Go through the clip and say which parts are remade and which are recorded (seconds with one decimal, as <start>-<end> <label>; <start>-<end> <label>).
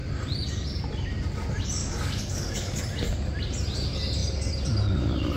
0.0-1.8 recorded; 1.8-2.8 remade; 2.8-5.4 recorded